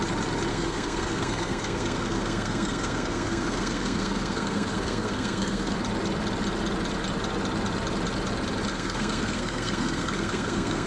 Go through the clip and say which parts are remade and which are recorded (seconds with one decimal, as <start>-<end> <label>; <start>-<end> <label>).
0.0-0.5 recorded; 0.5-5.7 remade; 5.7-8.7 recorded; 8.7-10.9 remade